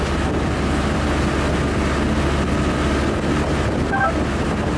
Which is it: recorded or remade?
recorded